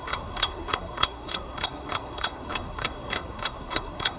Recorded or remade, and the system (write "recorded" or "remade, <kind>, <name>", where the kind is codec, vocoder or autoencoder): remade, codec, SNAC